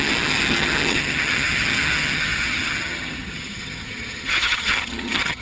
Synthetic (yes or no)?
yes